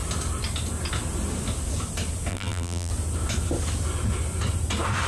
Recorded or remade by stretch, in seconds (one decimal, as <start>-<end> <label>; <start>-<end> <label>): 0.0-2.3 recorded; 2.3-2.9 remade; 2.9-5.1 recorded